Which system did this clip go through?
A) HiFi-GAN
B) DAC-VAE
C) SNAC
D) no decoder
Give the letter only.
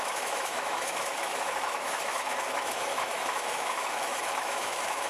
B